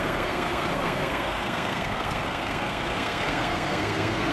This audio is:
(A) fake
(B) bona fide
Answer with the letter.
A